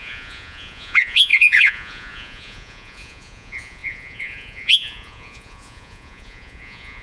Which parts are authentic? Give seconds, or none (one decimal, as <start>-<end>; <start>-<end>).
none